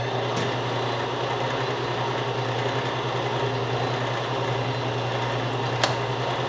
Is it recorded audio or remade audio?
recorded